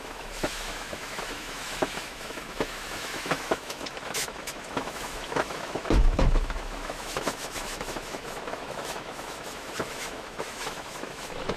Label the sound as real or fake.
fake